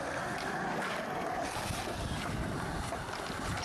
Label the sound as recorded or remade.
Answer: recorded